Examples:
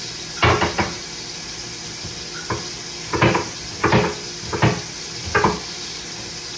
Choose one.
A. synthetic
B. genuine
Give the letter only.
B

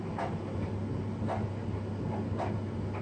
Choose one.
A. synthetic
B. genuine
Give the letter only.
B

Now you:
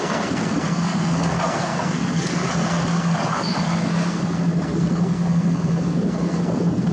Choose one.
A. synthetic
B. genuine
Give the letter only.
A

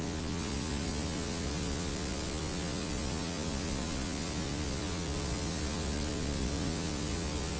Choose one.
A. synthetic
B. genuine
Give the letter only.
A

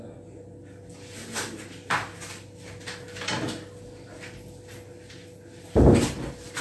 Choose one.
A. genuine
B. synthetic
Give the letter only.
A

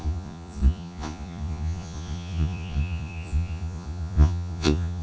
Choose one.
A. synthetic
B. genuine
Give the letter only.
A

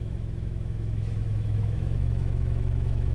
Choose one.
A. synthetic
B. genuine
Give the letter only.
A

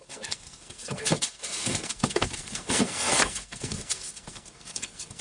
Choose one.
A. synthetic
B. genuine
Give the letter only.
A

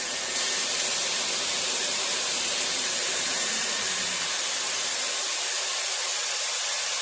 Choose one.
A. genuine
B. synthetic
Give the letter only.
B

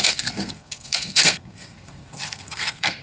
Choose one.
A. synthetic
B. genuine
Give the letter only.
A